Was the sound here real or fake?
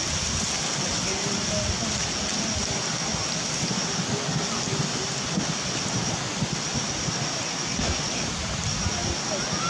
real